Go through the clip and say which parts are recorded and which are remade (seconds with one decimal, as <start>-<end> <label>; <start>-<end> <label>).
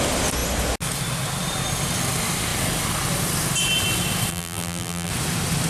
0.0-4.3 recorded; 4.3-5.1 remade; 5.1-5.7 recorded